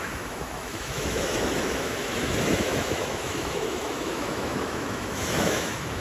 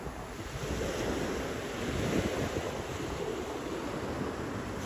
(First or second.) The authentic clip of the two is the second